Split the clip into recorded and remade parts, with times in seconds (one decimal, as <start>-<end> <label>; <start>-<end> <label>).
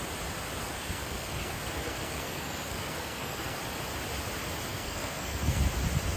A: 0.0-0.6 recorded; 0.6-3.6 remade; 3.6-4.7 recorded; 4.7-5.6 remade; 5.6-6.2 recorded